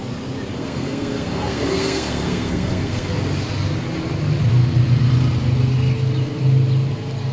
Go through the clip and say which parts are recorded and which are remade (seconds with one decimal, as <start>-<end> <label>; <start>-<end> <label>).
0.0-0.5 recorded; 0.5-3.1 remade; 3.1-7.3 recorded